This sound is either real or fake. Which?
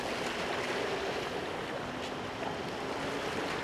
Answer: real